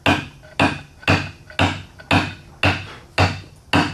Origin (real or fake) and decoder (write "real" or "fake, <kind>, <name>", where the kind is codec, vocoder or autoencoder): real